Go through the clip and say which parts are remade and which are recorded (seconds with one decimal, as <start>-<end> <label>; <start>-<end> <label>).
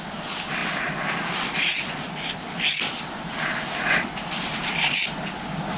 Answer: 0.0-5.8 recorded